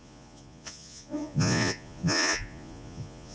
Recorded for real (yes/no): no